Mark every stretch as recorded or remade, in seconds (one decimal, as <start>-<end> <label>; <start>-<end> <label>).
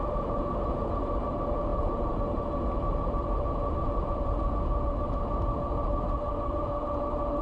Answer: 0.0-7.4 recorded